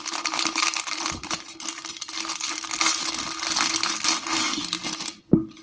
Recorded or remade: recorded